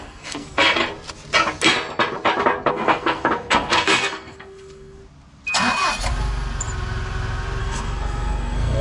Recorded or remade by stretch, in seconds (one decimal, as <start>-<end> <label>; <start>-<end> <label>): 0.0-0.8 remade; 0.8-2.7 recorded; 2.7-5.0 remade; 5.0-7.6 recorded; 7.6-8.8 remade